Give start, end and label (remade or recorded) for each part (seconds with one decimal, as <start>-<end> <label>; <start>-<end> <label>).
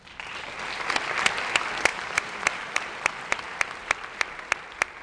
0.0-1.9 recorded; 1.9-3.2 remade; 3.2-5.0 recorded